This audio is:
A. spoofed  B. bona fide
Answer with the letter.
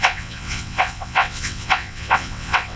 A